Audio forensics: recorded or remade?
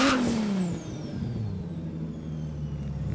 recorded